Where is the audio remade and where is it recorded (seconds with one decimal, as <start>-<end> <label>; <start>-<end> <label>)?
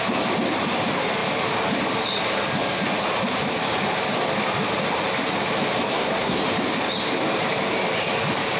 0.0-5.9 recorded; 5.9-6.4 remade; 6.4-8.6 recorded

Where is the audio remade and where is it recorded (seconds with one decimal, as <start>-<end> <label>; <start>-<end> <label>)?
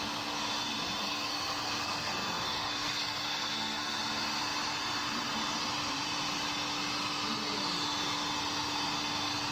0.0-1.0 recorded; 1.0-4.0 remade; 4.0-9.5 recorded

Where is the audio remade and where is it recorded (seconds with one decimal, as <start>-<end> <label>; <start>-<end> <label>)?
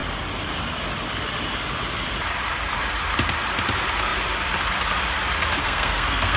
0.0-5.6 recorded; 5.6-6.4 remade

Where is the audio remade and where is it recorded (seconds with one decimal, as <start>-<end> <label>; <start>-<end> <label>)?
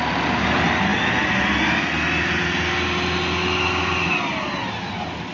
0.0-5.3 recorded